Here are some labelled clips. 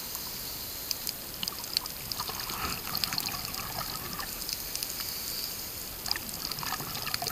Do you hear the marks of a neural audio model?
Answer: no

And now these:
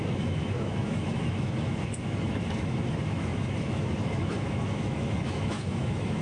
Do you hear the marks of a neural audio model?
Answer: yes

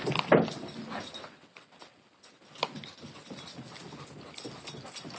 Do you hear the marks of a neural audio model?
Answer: no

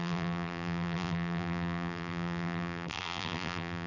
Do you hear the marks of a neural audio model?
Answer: yes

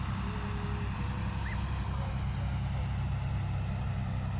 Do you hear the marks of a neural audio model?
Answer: no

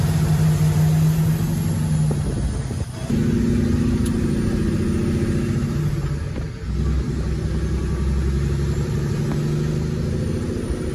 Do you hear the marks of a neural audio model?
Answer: no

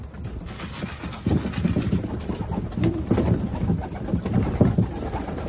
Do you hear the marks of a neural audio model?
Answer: no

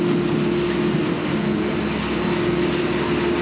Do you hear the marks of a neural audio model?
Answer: no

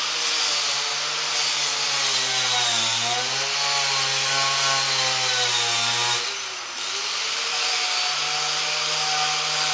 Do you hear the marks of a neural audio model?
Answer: no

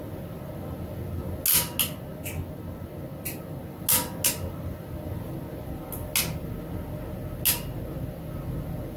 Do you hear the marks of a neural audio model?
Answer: no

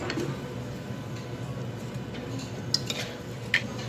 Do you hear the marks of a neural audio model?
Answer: no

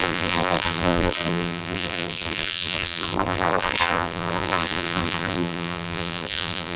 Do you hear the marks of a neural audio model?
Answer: yes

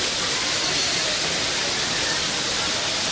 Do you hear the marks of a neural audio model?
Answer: no